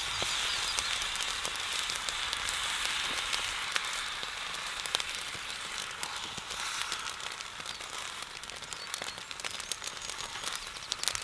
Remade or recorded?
recorded